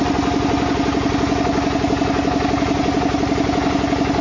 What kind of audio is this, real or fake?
real